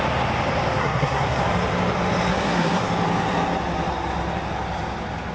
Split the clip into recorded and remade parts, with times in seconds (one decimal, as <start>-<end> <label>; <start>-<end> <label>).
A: 0.0-0.8 recorded; 0.8-1.4 remade; 1.4-2.3 recorded; 2.3-2.8 remade; 2.8-5.3 recorded